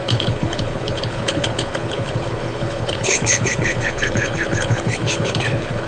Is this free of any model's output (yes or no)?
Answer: no